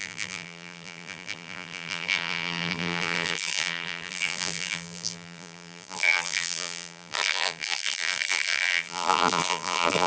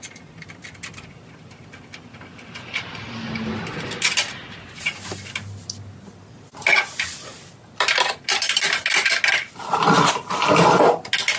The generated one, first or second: first